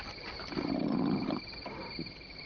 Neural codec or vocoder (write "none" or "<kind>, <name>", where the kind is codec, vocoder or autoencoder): none